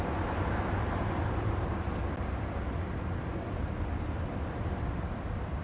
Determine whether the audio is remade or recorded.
recorded